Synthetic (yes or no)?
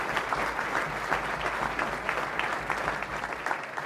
no